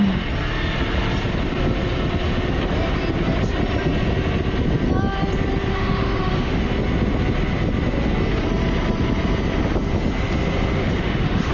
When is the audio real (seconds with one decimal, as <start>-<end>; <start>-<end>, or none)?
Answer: 0.0-5.7; 6.6-10.8